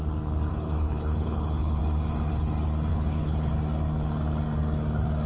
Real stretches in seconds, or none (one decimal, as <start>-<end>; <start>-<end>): 0.0-0.5; 1.8-2.9; 3.5-5.3